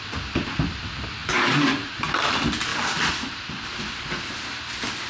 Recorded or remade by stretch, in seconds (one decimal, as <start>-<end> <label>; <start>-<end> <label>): 0.0-1.2 recorded; 1.2-2.3 remade; 2.3-2.7 recorded; 2.7-3.8 remade; 3.8-5.1 recorded